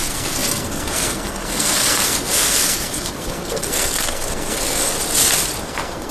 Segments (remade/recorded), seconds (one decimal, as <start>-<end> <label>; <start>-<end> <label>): 0.0-4.9 remade; 4.9-5.6 recorded; 5.6-6.1 remade

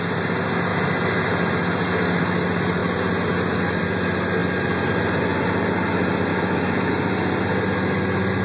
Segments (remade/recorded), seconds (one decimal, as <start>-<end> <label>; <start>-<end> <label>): 0.0-6.3 recorded; 6.3-6.9 remade; 6.9-8.4 recorded

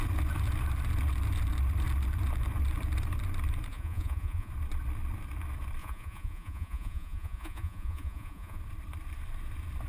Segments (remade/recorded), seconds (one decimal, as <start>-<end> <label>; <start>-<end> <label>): 0.0-3.7 recorded; 3.7-4.5 remade; 4.5-5.8 recorded; 5.8-8.6 remade; 8.6-9.9 recorded

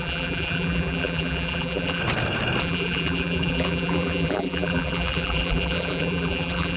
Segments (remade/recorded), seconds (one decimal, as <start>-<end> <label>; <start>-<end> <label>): 0.0-2.0 remade; 2.0-2.6 recorded; 2.6-6.8 remade

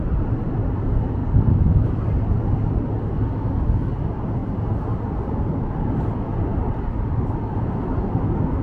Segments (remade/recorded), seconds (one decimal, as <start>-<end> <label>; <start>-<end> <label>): 0.0-8.6 recorded

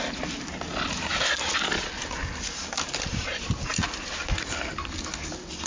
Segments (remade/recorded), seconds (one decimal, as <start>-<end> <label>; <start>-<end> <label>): 0.0-5.7 recorded